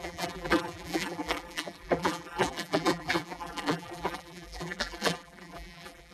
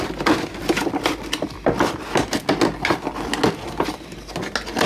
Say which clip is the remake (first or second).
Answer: first